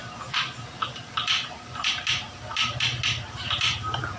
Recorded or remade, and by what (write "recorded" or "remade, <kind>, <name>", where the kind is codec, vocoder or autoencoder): recorded